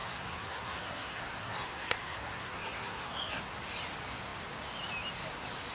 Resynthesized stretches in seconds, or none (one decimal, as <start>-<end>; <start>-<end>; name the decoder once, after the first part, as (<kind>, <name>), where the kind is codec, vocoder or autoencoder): 0.0-3.4 (codec, SNAC)